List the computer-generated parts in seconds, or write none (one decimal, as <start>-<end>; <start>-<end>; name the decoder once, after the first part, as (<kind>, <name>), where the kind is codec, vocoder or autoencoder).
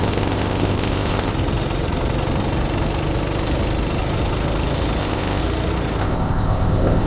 0.0-1.3 (codec, ZipCodec); 5.0-5.4; 6.0-7.1